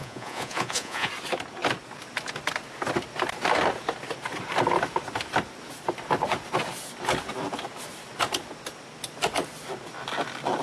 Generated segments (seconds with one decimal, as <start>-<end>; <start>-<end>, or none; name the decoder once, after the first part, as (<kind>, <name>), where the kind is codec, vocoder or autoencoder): 0.0-1.1 (vocoder, Vocos)